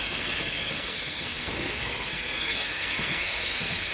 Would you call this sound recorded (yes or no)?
no